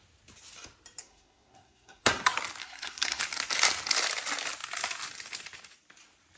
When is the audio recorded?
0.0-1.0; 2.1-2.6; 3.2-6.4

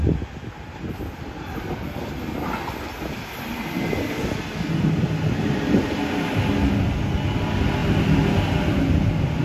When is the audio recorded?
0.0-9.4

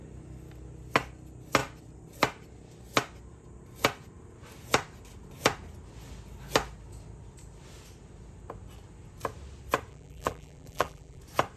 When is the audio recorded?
0.0-9.9; 11.2-11.6

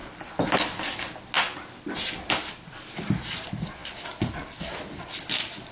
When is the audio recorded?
0.0-5.7

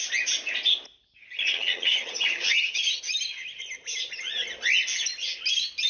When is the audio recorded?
0.0-1.2; 3.0-5.9

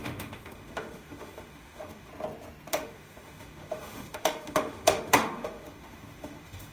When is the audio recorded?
2.1-2.7